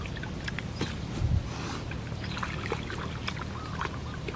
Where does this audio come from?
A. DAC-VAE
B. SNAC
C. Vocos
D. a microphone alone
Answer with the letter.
D